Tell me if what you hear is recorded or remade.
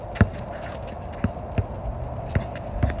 recorded